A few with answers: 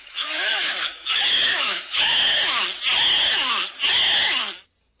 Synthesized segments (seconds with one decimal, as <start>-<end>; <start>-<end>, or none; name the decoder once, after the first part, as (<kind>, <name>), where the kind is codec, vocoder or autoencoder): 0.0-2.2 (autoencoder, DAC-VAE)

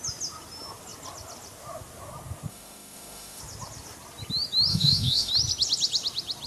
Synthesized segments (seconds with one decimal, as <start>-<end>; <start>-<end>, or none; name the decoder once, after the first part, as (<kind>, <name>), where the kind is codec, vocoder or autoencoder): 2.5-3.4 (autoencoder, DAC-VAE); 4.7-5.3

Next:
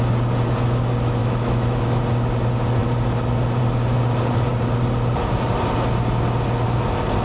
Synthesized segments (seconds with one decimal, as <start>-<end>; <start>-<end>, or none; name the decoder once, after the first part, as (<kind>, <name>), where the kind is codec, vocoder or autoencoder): 1.2-2.0 (autoencoder, DAC-VAE)

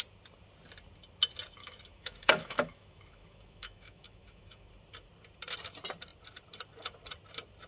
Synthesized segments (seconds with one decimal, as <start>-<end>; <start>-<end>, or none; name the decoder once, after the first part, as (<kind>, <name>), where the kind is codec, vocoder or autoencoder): 1.6-4.7 (autoencoder, DAC-VAE)

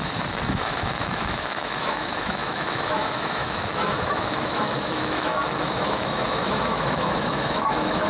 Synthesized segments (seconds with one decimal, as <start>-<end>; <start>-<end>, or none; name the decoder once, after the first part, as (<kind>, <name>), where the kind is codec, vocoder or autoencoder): 0.0-8.1 (autoencoder, DAC-VAE)